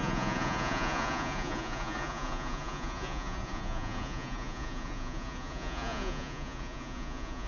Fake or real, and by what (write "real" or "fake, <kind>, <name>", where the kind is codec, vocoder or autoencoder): fake, vocoder, Vocos